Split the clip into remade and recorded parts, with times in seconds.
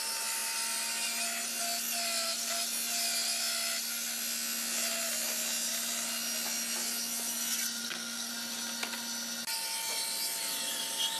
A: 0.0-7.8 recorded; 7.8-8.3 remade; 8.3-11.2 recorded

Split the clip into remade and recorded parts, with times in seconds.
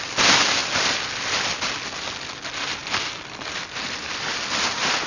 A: 0.0-2.8 recorded; 2.8-3.6 remade; 3.6-5.1 recorded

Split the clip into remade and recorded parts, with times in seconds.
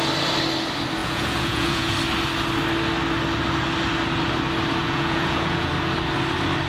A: 0.0-1.0 recorded; 1.0-1.9 remade; 1.9-4.8 recorded; 4.8-5.7 remade; 5.7-6.7 recorded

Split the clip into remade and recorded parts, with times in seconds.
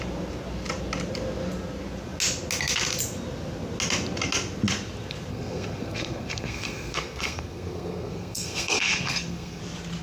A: 0.0-5.3 recorded; 5.3-9.6 remade; 9.6-10.0 recorded